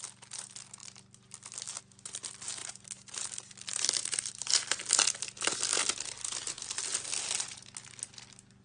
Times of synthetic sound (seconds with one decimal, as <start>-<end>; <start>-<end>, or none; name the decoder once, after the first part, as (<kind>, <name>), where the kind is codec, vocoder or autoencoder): 2.6-3.2 (vocoder, BigVGAN v2); 3.7-4.8